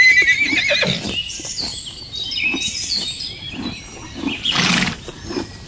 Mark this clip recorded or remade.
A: remade